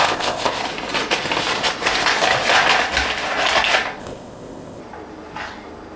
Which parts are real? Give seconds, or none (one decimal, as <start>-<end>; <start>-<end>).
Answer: 0.6-4.0; 4.8-6.0